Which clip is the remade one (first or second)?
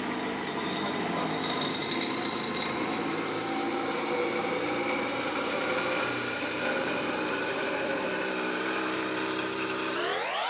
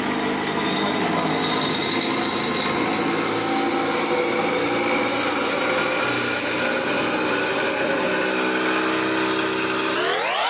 first